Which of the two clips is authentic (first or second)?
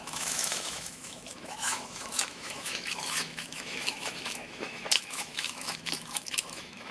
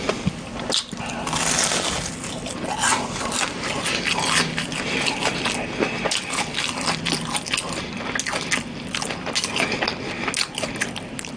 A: second